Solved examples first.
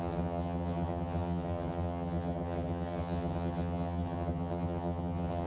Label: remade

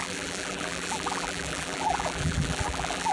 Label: remade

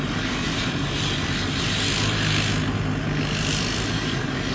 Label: recorded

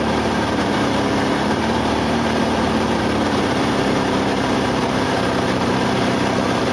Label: remade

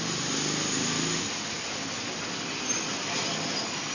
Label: recorded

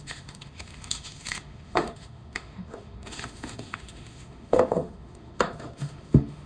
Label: remade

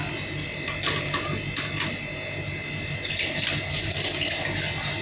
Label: recorded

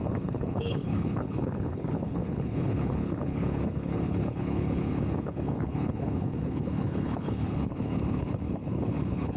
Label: remade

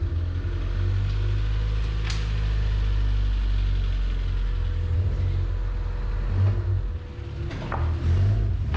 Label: recorded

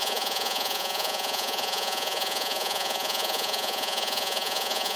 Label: remade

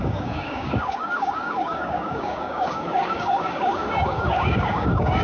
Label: remade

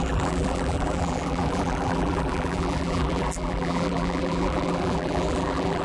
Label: remade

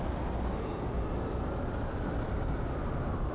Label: recorded